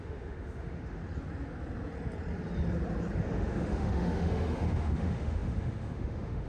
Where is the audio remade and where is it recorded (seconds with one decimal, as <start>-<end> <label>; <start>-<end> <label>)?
0.0-1.0 remade; 1.0-3.2 recorded; 3.2-6.5 remade